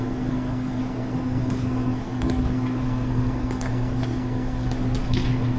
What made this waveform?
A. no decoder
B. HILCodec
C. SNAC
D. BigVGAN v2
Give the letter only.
C